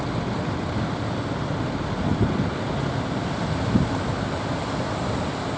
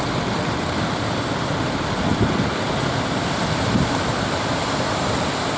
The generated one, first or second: second